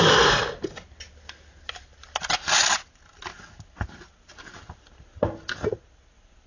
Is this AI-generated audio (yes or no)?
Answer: no